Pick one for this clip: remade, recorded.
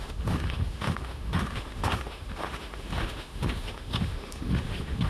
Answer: remade